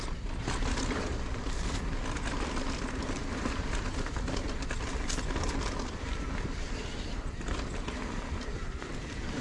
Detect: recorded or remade remade